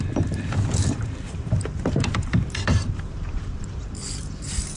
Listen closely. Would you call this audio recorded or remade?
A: remade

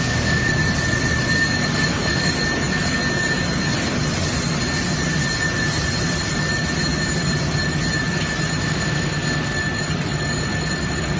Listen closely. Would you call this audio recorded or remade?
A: recorded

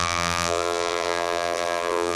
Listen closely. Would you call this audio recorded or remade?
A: remade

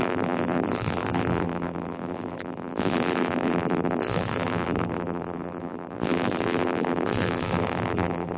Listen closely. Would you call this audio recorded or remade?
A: remade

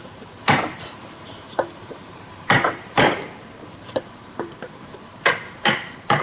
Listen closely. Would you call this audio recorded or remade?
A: remade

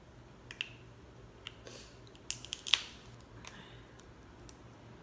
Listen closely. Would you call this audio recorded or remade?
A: recorded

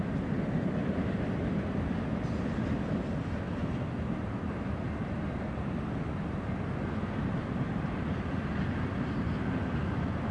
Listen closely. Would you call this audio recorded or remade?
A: recorded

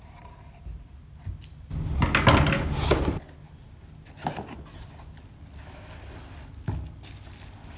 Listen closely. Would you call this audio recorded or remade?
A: recorded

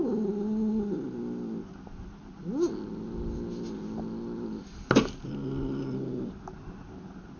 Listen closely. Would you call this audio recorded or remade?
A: recorded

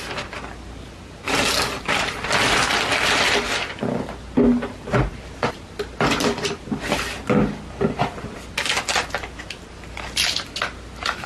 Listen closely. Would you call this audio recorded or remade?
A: remade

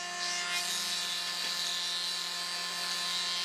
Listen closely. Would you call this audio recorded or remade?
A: recorded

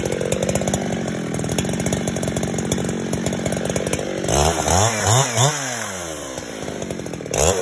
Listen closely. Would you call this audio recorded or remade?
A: recorded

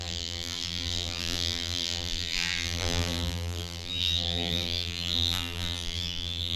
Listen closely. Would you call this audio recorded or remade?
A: remade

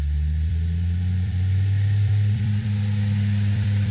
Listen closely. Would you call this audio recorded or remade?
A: remade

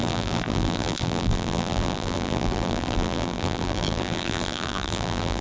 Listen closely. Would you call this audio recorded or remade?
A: remade